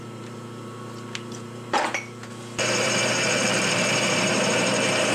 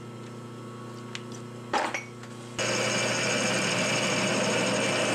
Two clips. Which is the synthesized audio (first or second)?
first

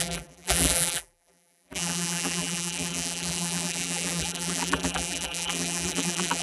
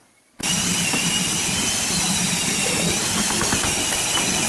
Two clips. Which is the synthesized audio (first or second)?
first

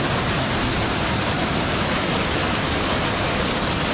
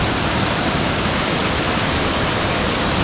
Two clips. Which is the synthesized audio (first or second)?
second